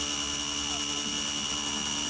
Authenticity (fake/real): real